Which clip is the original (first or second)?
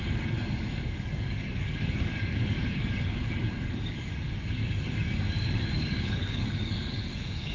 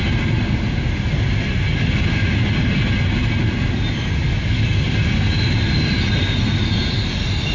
second